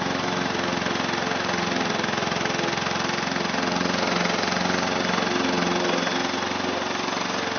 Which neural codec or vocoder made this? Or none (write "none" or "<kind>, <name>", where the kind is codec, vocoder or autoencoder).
none